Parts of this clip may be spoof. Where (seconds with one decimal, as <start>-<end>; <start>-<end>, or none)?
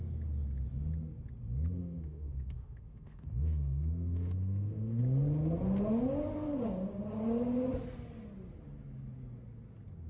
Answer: 1.8-5.0